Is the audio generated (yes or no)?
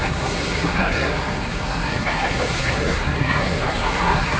yes